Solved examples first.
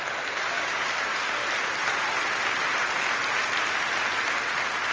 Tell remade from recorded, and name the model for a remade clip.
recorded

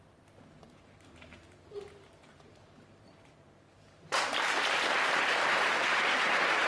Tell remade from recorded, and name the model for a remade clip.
remade, vocoder, BigVGAN v2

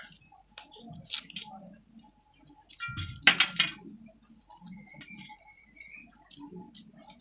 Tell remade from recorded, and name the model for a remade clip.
recorded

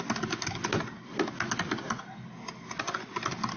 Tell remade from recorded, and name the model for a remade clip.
recorded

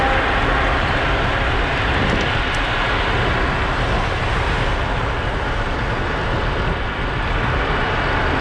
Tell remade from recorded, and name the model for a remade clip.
recorded